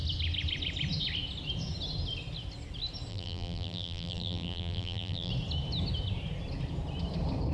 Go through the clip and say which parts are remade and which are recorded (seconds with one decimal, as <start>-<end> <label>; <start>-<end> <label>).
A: 0.0-3.1 recorded; 3.1-5.3 remade; 5.3-7.5 recorded